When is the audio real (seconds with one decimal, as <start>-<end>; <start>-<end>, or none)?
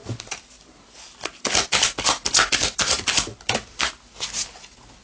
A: 1.9-3.3; 3.9-5.0